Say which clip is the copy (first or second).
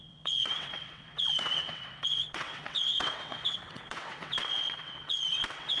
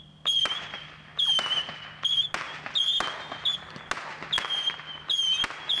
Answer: first